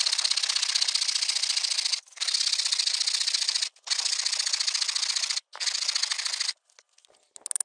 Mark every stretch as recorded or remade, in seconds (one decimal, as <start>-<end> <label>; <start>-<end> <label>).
0.0-7.6 recorded